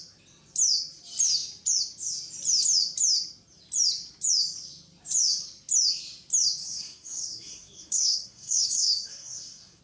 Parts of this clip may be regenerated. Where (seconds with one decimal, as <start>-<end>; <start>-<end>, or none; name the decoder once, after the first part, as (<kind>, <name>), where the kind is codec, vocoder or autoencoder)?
6.6-9.8 (codec, SNAC)